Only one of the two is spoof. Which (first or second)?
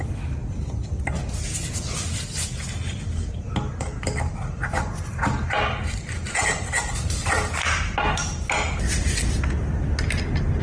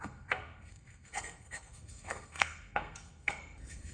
second